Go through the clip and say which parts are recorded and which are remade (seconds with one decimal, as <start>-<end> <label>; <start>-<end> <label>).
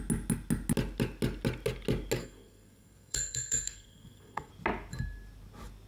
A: 0.0-2.2 recorded; 2.2-4.5 remade; 4.5-5.9 recorded